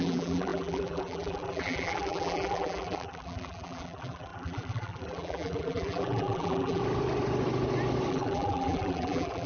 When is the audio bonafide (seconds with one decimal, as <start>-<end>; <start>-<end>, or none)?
6.8-8.1

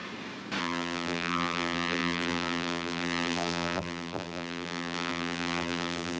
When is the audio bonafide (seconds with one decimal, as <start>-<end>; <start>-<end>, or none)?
0.0-0.6

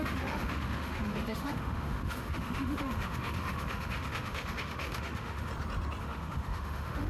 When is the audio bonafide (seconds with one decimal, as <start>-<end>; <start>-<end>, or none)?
5.5-6.0

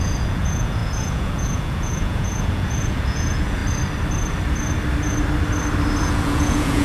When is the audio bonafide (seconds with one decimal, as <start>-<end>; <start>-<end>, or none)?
3.6-6.0

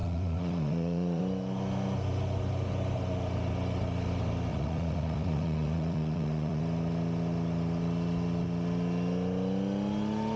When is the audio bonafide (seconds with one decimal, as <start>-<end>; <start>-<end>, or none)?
1.2-4.5; 6.6-10.4